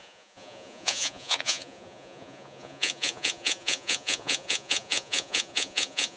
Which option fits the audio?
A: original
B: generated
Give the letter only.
B